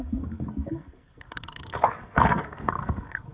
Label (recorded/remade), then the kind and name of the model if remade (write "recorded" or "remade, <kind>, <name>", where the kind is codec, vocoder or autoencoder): remade, codec, SNAC